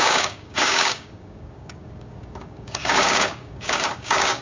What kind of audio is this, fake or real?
fake